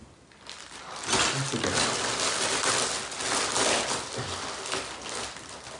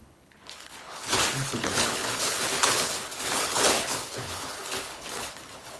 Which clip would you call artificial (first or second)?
second